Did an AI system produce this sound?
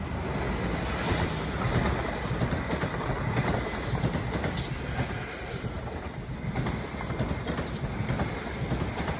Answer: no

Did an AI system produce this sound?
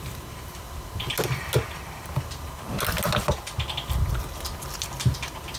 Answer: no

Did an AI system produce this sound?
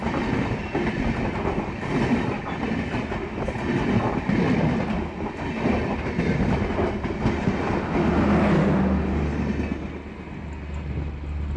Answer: no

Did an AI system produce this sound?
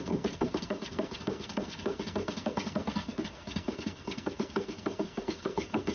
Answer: yes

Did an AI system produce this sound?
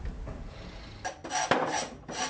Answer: no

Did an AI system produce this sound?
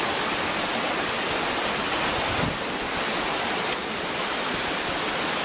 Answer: no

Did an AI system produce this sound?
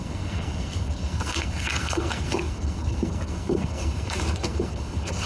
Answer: yes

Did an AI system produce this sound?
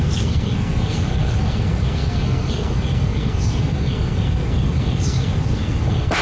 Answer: yes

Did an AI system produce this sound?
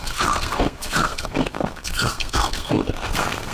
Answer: yes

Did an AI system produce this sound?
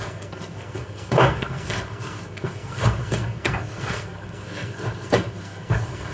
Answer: yes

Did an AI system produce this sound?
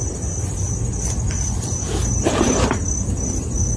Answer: no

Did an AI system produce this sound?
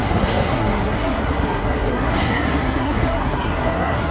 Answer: yes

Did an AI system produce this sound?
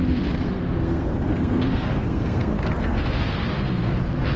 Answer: yes